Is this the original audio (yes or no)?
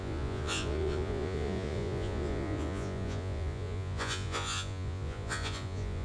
no